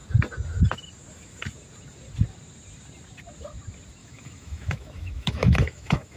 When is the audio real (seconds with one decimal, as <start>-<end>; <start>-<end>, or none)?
0.0-4.0